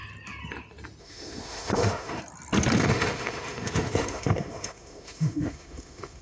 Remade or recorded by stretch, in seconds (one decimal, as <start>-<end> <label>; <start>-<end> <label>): 0.0-1.0 recorded; 1.0-2.2 remade; 2.2-2.8 recorded; 2.8-6.2 remade